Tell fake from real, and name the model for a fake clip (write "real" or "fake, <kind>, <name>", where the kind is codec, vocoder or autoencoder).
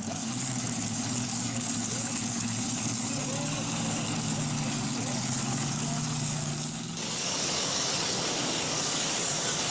fake, codec, DAC